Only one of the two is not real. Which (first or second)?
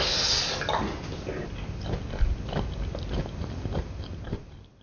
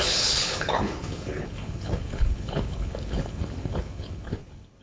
second